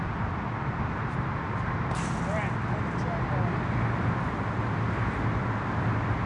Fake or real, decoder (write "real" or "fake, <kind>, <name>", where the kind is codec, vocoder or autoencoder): real